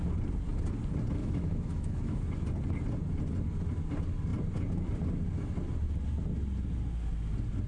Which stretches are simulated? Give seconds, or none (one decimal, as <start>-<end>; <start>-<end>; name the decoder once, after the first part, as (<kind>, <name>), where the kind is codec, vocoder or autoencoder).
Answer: 1.2-2.2 (autoencoder, DAC-VAE)